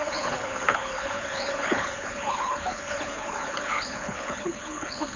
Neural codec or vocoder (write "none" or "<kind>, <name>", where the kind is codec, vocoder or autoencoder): codec, HILCodec